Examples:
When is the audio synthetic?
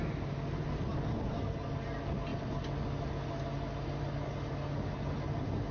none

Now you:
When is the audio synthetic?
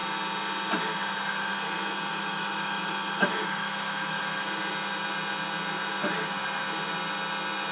2.1-4.2 (autoencoder, DAC-VAE)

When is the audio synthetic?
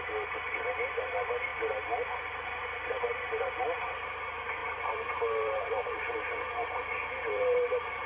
0.0-1.5 (vocoder, BigVGAN v2); 2.3-8.1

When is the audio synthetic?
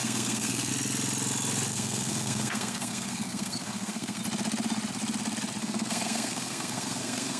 0.0-0.7 (codec, SNAC); 1.7-4.2; 5.6-7.4